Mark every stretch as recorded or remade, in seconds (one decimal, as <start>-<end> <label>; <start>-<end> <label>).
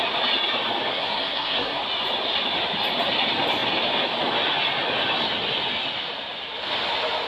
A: 0.0-0.9 recorded; 0.9-1.8 remade; 1.8-7.3 recorded